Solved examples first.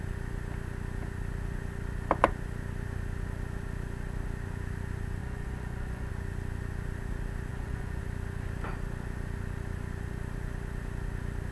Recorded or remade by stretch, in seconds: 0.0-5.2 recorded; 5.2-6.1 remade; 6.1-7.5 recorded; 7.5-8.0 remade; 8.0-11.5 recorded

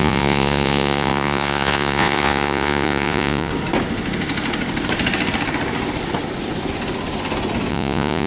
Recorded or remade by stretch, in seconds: 0.0-3.5 remade; 3.5-7.7 recorded; 7.7-8.3 remade

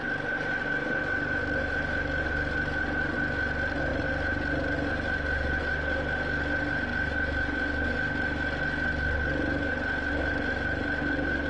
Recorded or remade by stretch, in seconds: 0.0-11.5 recorded

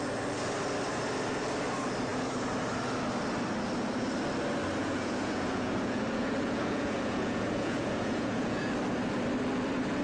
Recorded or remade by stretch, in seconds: 0.0-4.8 recorded; 4.8-8.6 remade; 8.6-10.0 recorded

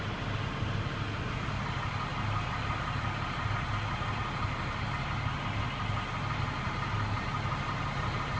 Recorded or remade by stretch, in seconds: 0.0-8.4 recorded

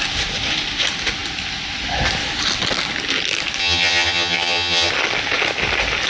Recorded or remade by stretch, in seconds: 0.0-3.6 recorded; 3.6-4.9 remade; 4.9-6.1 recorded

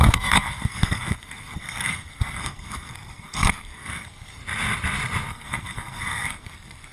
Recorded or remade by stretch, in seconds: 0.0-4.4 remade; 4.4-5.3 recorded; 5.3-6.9 remade

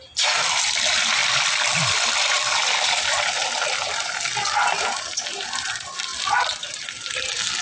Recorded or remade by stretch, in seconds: 0.0-7.6 recorded